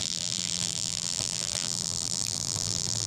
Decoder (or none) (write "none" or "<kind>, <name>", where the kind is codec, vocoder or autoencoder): vocoder, BigVGAN v2